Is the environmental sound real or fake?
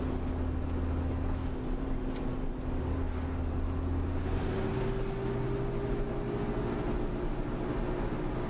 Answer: real